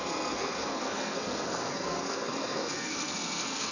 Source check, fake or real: fake